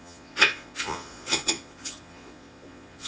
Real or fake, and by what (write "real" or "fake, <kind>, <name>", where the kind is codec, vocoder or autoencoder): fake, vocoder, Vocos